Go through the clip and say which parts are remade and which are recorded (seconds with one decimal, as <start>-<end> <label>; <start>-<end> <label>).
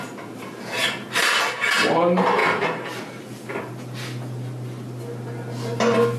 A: 0.0-6.2 recorded